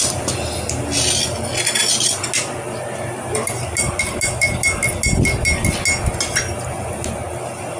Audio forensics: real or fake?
real